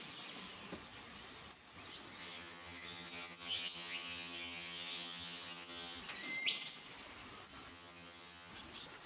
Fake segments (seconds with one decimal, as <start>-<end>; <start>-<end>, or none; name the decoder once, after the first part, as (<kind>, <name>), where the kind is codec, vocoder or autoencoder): 2.2-6.0 (vocoder, HiFi-GAN); 7.7-8.5